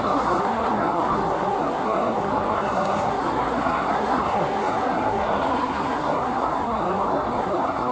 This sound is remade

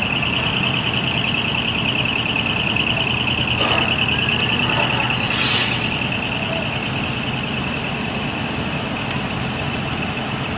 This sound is recorded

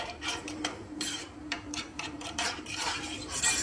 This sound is remade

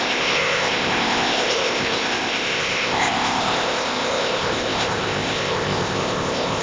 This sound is remade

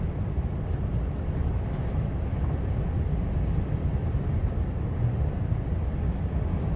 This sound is recorded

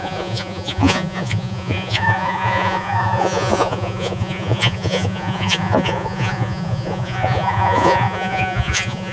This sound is remade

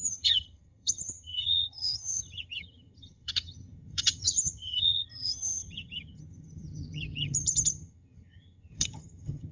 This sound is remade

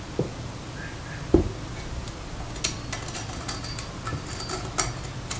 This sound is recorded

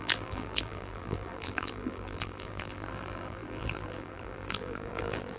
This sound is remade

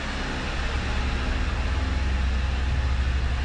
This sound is recorded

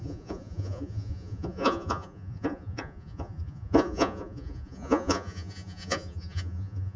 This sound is remade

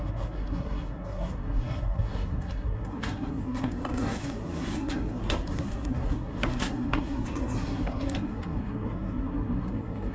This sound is remade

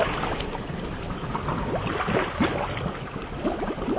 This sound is recorded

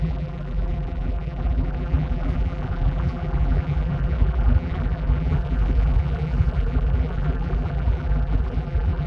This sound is remade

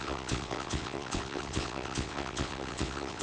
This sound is remade